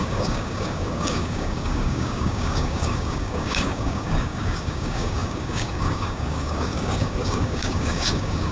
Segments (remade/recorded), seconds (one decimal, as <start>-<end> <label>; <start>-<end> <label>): 0.0-8.5 remade